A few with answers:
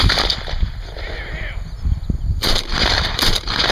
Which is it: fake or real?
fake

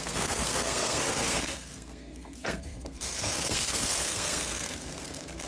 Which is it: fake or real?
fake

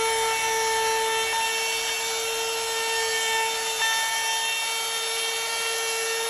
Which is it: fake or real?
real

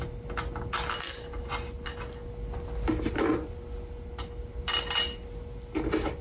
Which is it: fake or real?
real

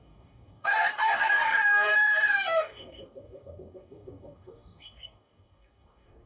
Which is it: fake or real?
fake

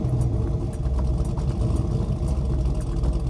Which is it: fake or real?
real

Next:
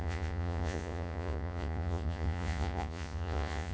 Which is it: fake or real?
fake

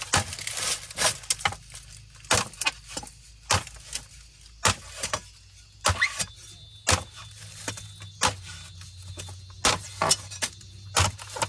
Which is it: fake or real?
real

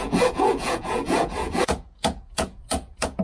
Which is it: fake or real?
fake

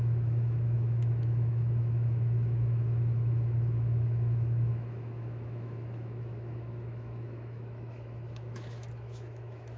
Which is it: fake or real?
fake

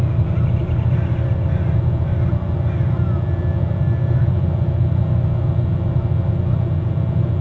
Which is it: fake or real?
real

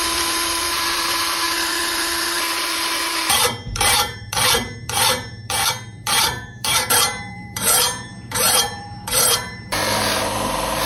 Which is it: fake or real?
fake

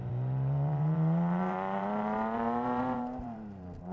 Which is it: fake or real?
fake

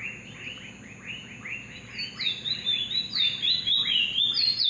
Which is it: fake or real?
real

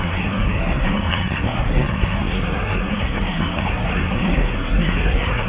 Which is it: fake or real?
fake